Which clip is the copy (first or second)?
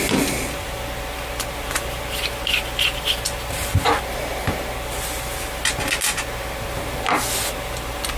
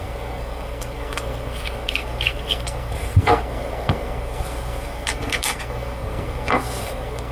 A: second